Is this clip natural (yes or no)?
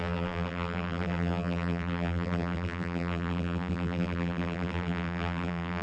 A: no